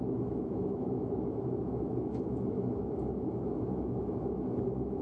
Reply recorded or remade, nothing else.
remade